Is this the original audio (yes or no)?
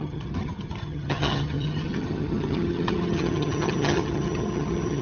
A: no